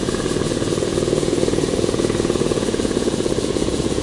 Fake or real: fake